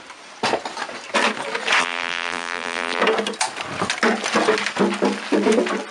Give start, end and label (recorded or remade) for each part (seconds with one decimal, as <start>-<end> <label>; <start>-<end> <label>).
0.0-1.8 recorded; 1.8-3.0 remade; 3.0-5.9 recorded